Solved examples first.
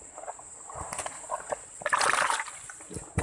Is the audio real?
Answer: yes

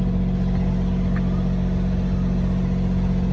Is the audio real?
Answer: yes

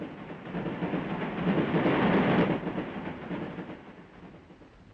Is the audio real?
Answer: yes